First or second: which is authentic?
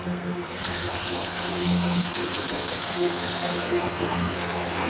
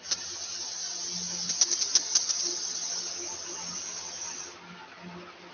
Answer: second